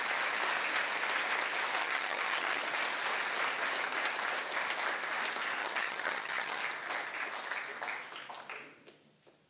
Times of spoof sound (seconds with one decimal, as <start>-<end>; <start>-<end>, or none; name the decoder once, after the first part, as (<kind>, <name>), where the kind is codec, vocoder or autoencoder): 1.8-2.6 (vocoder, HiFi-GAN); 5.6-6.6